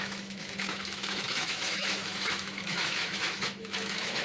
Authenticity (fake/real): fake